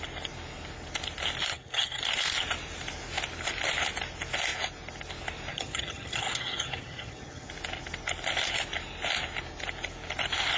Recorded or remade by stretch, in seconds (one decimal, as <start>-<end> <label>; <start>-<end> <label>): 0.0-1.5 recorded; 1.5-2.0 remade; 2.0-5.5 recorded; 5.5-7.5 remade; 7.5-10.6 recorded